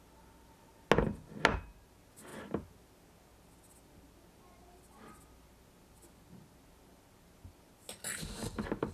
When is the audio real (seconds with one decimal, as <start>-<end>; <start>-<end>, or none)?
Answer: 0.0-8.9